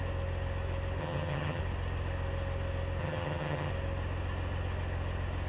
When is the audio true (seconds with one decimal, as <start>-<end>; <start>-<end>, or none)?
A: 0.0-1.0; 1.6-3.0; 3.7-5.5